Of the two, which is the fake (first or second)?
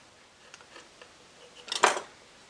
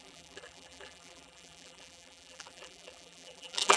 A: second